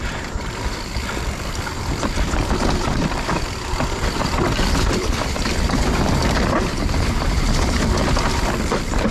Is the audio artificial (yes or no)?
yes